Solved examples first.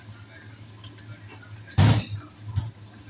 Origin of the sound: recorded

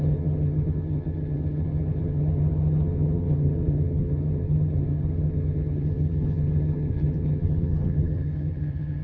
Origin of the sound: remade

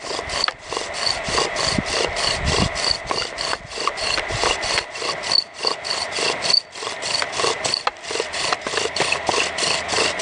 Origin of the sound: recorded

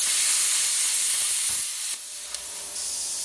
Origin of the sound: remade